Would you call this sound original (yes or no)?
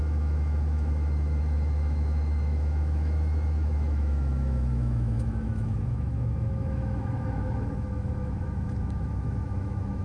no